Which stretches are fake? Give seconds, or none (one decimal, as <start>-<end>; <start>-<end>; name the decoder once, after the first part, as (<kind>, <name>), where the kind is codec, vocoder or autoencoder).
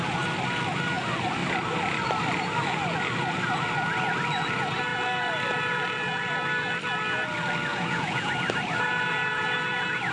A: 7.7-8.3 (vocoder, Vocos)